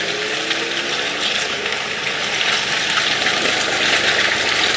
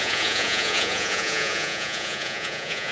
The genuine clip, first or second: first